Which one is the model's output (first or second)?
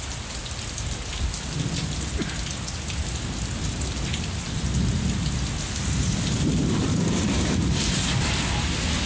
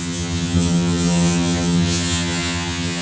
second